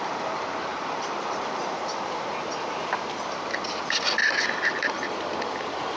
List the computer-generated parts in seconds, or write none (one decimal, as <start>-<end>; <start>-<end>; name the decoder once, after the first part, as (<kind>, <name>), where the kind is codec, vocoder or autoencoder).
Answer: none